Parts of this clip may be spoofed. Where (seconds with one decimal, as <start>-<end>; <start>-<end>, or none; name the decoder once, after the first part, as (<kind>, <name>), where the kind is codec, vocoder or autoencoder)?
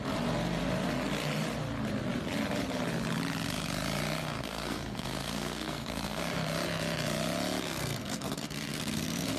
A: 4.4-6.2 (codec, SNAC); 7.8-9.4